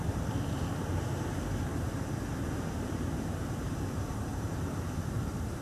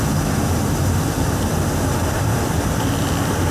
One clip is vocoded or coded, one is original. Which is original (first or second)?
second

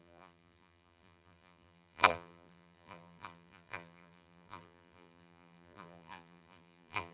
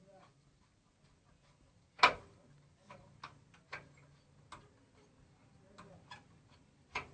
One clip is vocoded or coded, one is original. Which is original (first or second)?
second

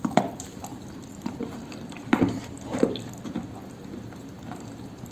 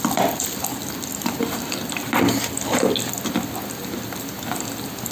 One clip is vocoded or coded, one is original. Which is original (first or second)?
second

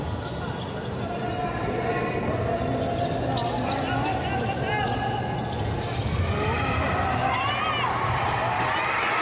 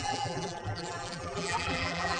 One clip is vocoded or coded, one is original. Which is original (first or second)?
first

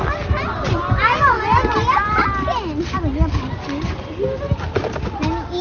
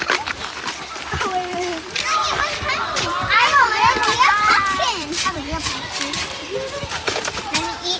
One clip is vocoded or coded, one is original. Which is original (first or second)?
first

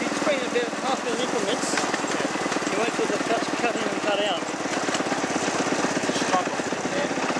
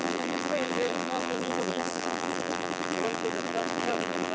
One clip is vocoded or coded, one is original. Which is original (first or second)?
first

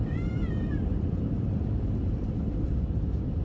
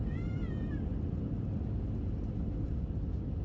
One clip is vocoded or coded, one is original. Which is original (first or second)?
second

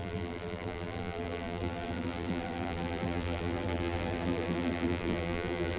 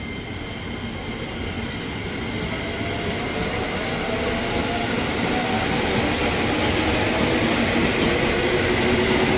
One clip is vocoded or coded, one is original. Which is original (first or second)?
second